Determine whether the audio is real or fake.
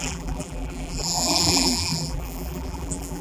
fake